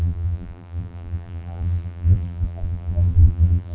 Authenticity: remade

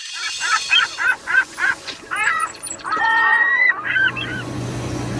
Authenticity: remade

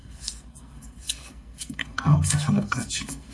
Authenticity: remade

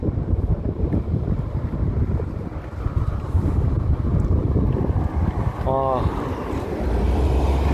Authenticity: recorded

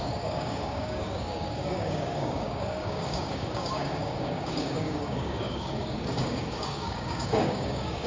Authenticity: remade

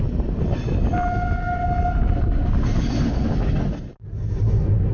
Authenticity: recorded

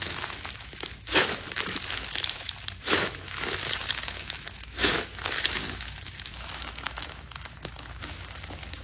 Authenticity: remade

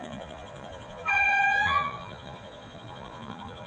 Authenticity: remade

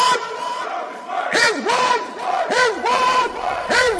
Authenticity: remade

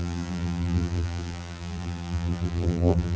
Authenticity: remade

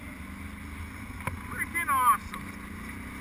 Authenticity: recorded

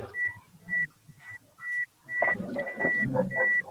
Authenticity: recorded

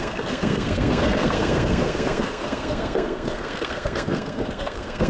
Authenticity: remade